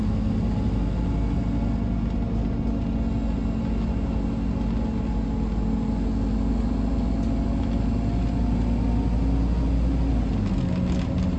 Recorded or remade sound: recorded